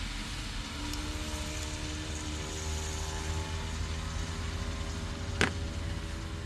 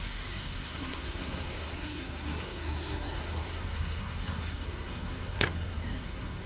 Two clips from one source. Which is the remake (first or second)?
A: second